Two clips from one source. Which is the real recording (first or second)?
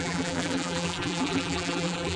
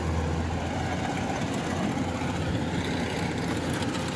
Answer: second